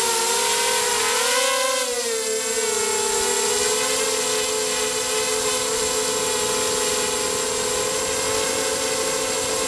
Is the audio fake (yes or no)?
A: no